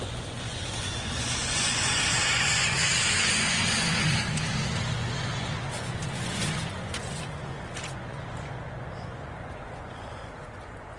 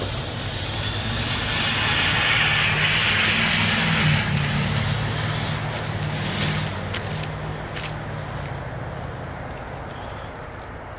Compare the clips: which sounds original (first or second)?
second